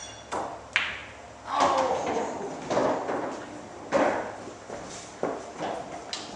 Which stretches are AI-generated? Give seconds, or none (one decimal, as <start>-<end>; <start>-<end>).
none